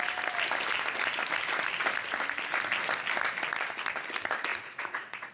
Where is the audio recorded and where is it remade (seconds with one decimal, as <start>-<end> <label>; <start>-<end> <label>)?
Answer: 0.0-4.5 recorded; 4.5-5.3 remade